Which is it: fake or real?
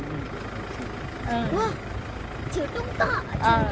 real